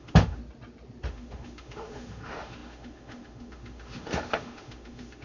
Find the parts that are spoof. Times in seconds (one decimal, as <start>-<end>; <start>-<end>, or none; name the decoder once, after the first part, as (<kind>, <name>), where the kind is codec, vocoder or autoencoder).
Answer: 0.0-0.4 (autoencoder, DAC-VAE); 1.1-5.2